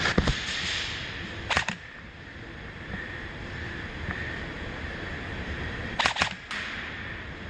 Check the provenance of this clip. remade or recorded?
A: remade